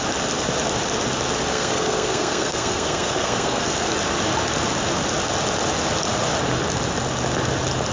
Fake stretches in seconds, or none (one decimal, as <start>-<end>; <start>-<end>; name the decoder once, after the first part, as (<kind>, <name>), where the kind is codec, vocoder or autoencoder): 1.5-3.9 (codec, SNAC)